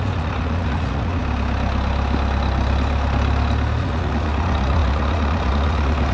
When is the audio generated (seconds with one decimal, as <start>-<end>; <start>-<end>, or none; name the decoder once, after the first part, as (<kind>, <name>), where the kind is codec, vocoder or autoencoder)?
0.0-1.2 (vocoder, Vocos); 3.8-6.1